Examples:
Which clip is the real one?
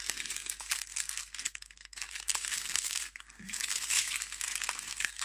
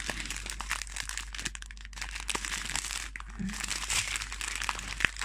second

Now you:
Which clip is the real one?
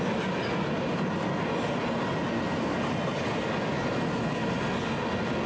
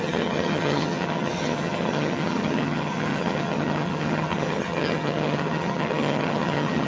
first